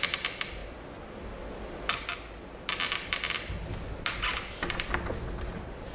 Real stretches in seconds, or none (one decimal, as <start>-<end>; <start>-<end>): 0.0-5.9